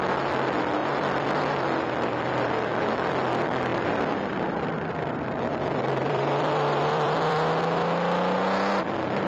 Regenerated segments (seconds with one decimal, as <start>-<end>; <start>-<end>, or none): 0.8-2.5; 3.7-7.6